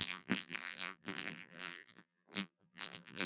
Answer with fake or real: fake